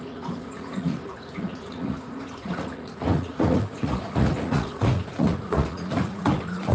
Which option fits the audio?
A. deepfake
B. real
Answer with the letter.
A